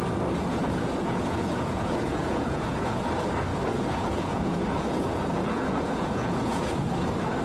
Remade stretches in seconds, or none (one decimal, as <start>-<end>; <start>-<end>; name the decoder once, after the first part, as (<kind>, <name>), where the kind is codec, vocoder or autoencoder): 0.6-3.0 (vocoder, Vocos); 3.5-6.9